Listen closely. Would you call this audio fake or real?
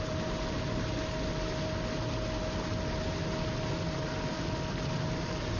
real